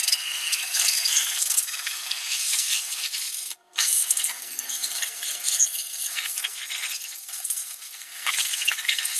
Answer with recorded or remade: remade